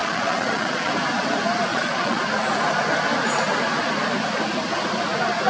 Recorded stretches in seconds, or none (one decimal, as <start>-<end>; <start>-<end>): 0.9-1.7; 2.2-5.5